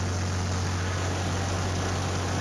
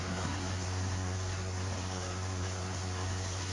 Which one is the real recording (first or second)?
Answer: first